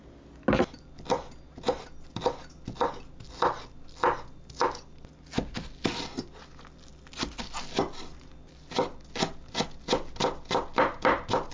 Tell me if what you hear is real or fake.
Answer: real